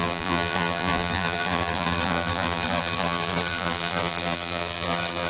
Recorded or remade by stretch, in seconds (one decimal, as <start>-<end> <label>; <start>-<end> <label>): 0.0-5.3 remade